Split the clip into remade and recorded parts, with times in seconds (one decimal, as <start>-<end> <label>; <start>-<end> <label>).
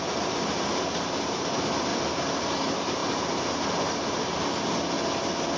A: 0.0-0.7 remade; 0.7-1.3 recorded; 1.3-1.9 remade; 1.9-2.5 recorded; 2.5-3.0 remade; 3.0-5.6 recorded